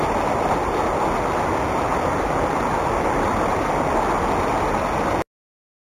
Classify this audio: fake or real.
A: real